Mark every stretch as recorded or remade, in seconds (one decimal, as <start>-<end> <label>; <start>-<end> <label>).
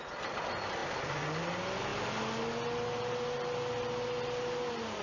0.0-5.0 recorded